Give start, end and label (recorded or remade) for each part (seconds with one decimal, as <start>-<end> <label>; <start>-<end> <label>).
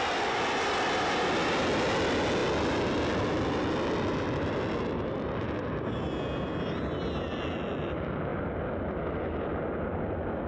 0.0-10.5 recorded